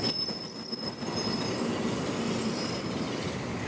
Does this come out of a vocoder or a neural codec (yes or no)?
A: no